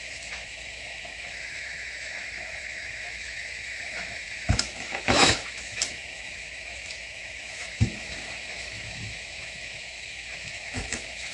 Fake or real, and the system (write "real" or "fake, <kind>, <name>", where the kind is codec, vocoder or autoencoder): fake, autoencoder, DAC-VAE